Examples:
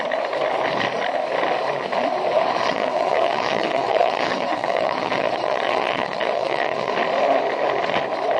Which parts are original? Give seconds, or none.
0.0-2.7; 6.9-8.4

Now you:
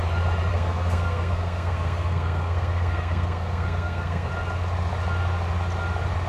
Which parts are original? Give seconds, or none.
0.0-0.5; 4.3-6.3

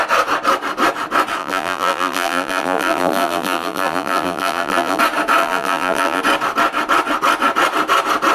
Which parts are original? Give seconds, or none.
0.0-1.4; 5.0-5.4; 6.2-8.3